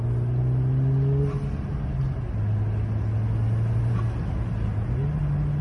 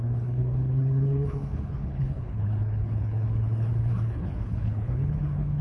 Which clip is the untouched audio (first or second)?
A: first